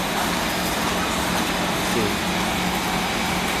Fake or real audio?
real